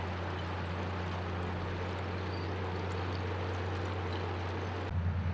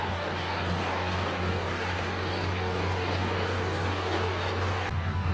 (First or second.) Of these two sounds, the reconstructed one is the second